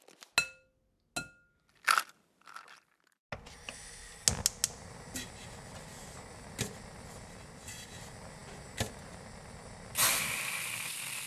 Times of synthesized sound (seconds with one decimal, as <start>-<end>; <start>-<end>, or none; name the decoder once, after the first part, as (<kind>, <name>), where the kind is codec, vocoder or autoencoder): 10.0-11.3 (vocoder, BigVGAN v2)